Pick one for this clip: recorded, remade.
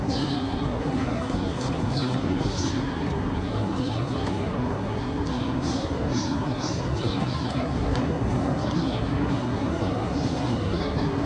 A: remade